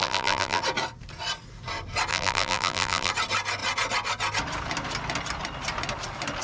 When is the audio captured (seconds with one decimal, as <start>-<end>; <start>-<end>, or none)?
0.6-2.1; 3.1-6.4